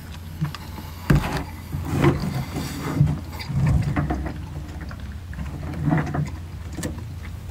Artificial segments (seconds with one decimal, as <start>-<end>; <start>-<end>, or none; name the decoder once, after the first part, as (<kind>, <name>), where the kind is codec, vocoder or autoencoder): 2.2-3.7 (vocoder, BigVGAN v2)